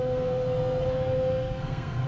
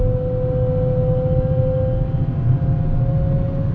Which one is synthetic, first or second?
first